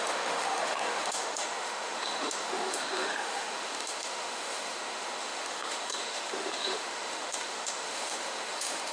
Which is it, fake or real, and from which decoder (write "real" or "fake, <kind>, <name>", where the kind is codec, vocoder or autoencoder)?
fake, autoencoder, DAC-VAE